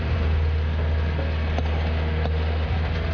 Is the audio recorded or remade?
recorded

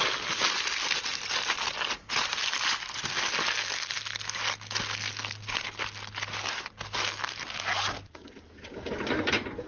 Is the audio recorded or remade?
recorded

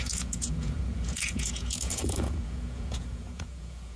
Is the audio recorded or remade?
remade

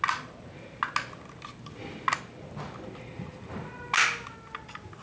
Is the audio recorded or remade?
recorded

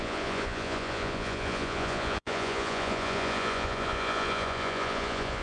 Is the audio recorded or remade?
remade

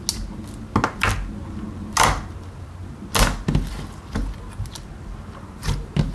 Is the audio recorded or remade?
recorded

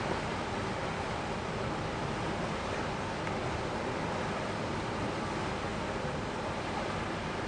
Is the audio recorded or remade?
remade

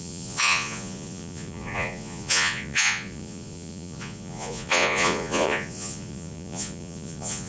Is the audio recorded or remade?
remade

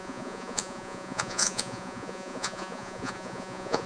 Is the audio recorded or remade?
remade